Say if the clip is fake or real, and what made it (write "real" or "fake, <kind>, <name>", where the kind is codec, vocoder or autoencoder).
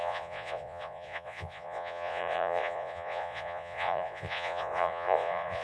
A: fake, vocoder, Vocos